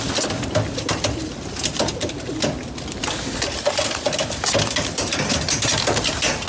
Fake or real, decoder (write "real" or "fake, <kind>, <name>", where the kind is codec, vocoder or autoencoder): real